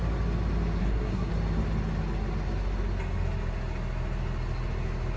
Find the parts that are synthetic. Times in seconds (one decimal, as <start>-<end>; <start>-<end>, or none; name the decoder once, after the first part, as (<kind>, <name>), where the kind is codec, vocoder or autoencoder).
0.8-1.3 (codec, SNAC)